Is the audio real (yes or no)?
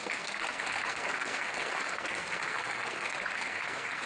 no